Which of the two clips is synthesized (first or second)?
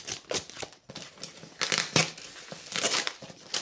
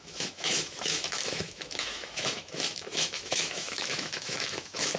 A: second